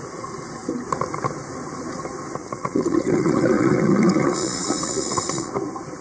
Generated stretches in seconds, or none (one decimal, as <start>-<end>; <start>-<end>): 2.4-5.5